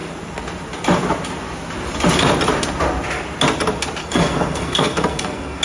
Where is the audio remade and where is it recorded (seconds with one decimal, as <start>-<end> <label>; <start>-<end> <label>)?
0.0-4.0 recorded; 4.0-5.6 remade